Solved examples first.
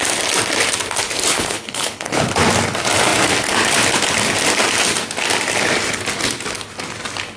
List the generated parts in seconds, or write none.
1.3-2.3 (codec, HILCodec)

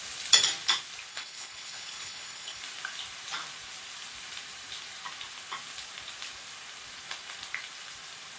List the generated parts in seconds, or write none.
1.1-2.6 (codec, HILCodec)

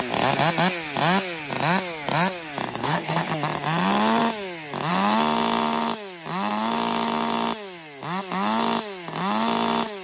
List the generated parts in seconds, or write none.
2.8-3.3 (codec, HILCodec)

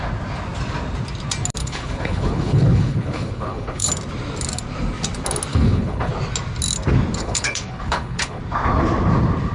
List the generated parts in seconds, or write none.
1.6-3.9 (codec, HILCodec); 5.5-6.1; 7.2-8.4

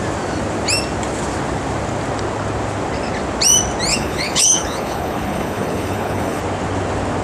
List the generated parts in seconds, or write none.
3.9-6.4 (codec, HILCodec)

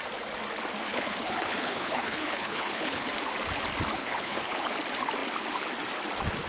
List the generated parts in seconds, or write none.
0.9-3.1 (codec, HILCodec); 4.0-4.7

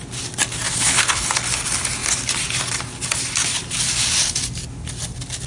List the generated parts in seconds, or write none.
0.7-1.3 (codec, HILCodec)

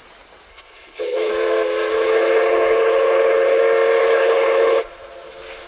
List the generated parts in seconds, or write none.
0.5-1.3 (codec, HILCodec); 1.9-3.6; 4.0-4.8